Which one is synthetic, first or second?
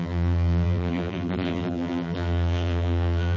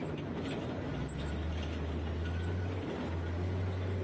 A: first